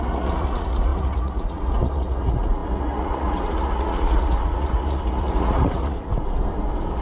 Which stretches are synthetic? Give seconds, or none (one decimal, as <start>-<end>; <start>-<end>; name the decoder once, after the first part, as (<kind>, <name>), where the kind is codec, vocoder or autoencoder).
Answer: 0.0-6.1 (vocoder, Vocos)